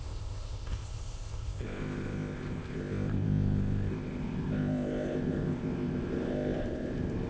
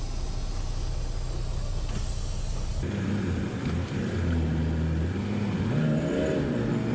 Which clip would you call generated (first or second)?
first